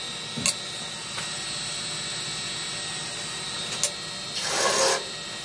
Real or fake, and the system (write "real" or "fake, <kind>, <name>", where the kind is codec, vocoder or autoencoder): real